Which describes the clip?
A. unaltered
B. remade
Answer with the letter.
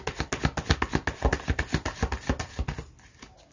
A